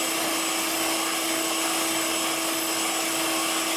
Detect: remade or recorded recorded